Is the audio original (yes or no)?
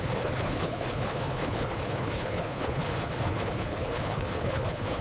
no